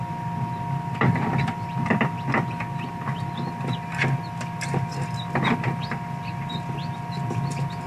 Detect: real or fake real